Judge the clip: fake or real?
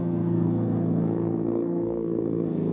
fake